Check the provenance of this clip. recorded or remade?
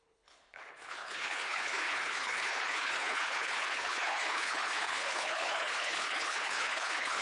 remade